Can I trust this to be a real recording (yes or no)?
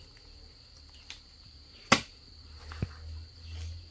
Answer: yes